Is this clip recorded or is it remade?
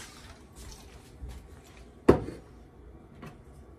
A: recorded